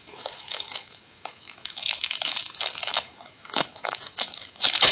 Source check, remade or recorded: remade